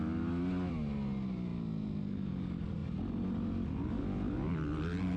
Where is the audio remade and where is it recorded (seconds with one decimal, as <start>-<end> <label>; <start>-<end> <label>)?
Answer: 0.0-5.2 recorded

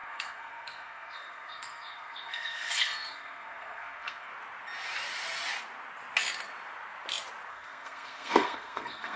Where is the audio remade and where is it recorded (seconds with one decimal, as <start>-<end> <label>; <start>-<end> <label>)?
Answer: 0.0-4.3 remade; 4.3-7.5 recorded; 7.5-9.2 remade

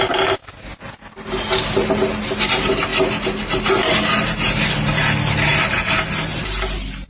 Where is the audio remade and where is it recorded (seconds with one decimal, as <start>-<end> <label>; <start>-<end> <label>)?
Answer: 0.0-7.1 recorded

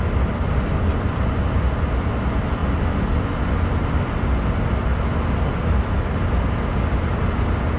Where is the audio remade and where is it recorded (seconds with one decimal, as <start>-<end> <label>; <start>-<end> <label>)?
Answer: 0.0-7.8 recorded

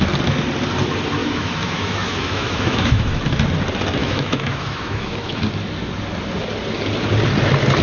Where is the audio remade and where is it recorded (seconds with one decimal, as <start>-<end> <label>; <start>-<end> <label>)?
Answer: 0.0-1.2 recorded; 1.2-3.2 remade; 3.2-4.0 recorded; 4.0-5.4 remade; 5.4-7.8 recorded